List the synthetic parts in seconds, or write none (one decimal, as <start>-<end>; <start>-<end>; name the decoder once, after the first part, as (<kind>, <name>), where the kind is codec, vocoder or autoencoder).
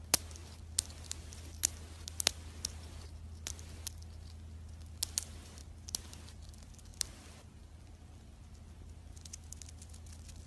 none